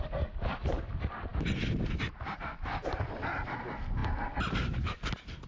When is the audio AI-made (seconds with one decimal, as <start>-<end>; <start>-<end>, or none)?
none